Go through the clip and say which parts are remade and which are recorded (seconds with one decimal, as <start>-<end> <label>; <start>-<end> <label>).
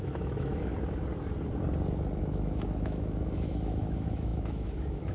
0.0-0.7 remade; 0.7-2.2 recorded; 2.2-5.1 remade